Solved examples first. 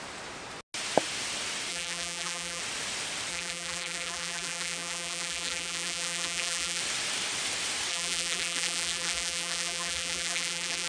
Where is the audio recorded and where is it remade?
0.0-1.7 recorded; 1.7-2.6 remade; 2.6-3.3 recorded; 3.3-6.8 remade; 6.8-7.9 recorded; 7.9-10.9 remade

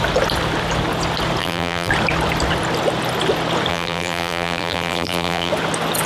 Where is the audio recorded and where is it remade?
0.0-1.4 recorded; 1.4-1.9 remade; 1.9-3.7 recorded; 3.7-5.5 remade; 5.5-6.1 recorded

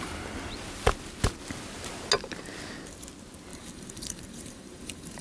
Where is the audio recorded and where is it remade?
0.0-3.5 recorded; 3.5-5.2 remade

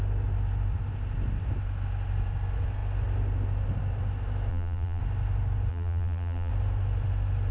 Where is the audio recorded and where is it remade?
0.0-4.5 recorded; 4.5-5.0 remade; 5.0-5.7 recorded; 5.7-6.5 remade; 6.5-7.5 recorded

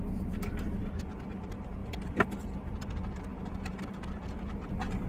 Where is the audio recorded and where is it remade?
0.0-1.8 recorded; 1.8-2.9 remade; 2.9-3.3 recorded; 3.3-3.9 remade; 3.9-5.1 recorded

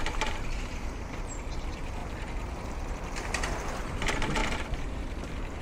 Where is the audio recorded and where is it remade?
0.0-2.0 remade; 2.0-3.8 recorded; 3.8-5.6 remade

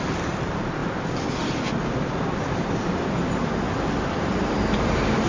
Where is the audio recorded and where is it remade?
0.0-0.8 remade; 0.8-4.0 recorded; 4.0-5.3 remade